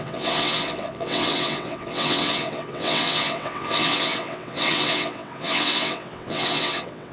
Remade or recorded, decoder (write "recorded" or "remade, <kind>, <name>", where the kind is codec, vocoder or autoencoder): remade, vocoder, WaveNeXt